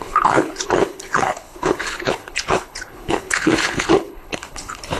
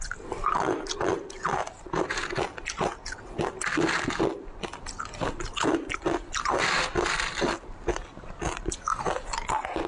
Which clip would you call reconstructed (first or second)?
first